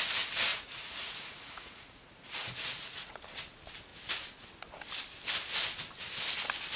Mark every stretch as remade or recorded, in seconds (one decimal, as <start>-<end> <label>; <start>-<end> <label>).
0.0-0.5 recorded; 0.5-3.1 remade; 3.1-6.8 recorded